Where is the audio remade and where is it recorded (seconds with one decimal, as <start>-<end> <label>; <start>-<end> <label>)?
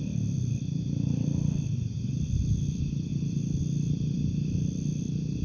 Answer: 0.0-5.4 recorded